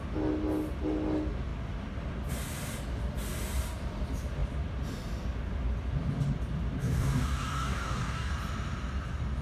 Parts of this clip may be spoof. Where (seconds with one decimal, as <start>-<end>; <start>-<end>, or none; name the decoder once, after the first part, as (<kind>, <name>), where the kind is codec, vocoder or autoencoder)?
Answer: 6.8-8.3 (codec, DAC)